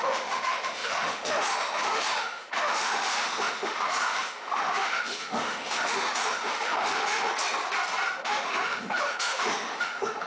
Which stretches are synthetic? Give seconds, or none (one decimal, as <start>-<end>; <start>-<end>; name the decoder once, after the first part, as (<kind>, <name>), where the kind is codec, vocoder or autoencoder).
0.0-7.3 (autoencoder, DAC-VAE); 8.2-10.3